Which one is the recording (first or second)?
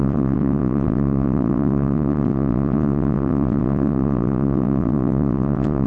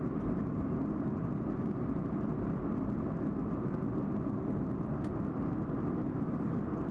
second